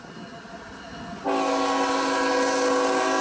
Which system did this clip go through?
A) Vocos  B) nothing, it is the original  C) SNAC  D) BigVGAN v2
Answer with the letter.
B